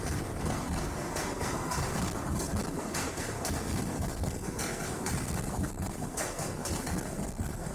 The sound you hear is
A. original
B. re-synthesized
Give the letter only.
B